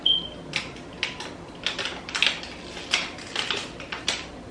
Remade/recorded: recorded